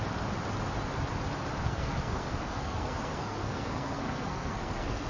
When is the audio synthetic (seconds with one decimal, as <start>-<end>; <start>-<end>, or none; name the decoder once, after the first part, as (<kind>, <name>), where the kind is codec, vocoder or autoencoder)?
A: 1.6-5.1 (codec, SNAC)